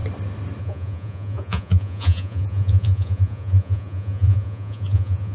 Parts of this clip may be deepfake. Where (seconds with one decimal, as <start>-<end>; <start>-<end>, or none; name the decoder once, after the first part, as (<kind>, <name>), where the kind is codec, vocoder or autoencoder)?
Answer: 0.6-5.3 (vocoder, Vocos)